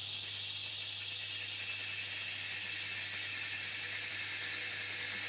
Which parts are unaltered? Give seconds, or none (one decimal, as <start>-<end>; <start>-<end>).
0.0-5.3